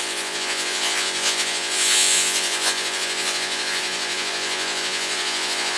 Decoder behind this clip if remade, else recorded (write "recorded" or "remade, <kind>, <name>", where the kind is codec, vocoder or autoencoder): remade, vocoder, Vocos